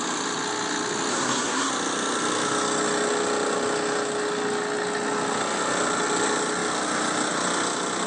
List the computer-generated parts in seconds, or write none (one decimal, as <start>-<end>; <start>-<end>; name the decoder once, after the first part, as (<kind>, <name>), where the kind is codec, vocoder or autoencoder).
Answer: 1.1-1.7 (codec, SNAC)